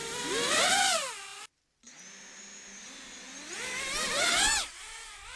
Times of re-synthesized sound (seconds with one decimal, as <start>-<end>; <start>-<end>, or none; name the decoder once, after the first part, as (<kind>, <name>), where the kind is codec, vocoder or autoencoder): none